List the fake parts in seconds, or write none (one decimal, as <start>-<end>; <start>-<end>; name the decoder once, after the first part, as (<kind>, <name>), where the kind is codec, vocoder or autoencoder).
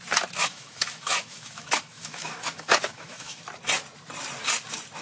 0.4-3.4 (autoencoder, DAC-VAE)